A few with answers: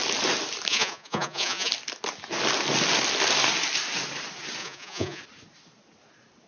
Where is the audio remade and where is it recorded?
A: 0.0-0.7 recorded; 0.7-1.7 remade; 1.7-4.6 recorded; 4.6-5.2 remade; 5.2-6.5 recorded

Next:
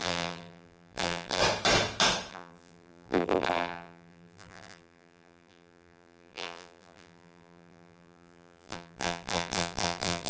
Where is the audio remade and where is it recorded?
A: 0.0-1.4 remade; 1.4-2.3 recorded; 2.3-10.3 remade

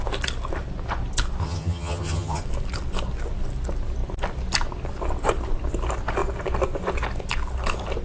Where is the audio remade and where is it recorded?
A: 0.0-1.4 recorded; 1.4-2.4 remade; 2.4-8.0 recorded

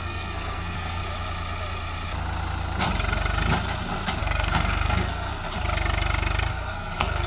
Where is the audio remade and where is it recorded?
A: 0.0-1.0 remade; 1.0-4.2 recorded; 4.2-5.3 remade; 5.3-6.5 recorded; 6.5-7.3 remade

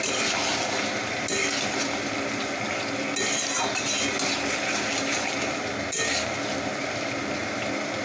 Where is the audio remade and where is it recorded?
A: 0.0-8.0 recorded

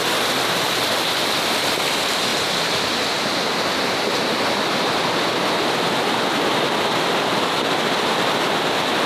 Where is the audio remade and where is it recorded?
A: 0.0-9.1 recorded

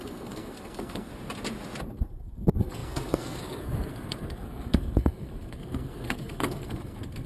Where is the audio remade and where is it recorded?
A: 0.0-1.1 remade; 1.1-2.0 recorded; 2.0-7.3 remade

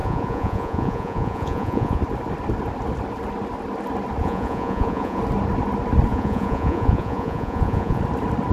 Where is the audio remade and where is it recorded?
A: 0.0-2.0 remade; 2.0-4.2 recorded; 4.2-5.2 remade; 5.2-6.1 recorded; 6.1-8.0 remade; 8.0-8.5 recorded